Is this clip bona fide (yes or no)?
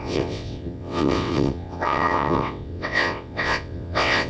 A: no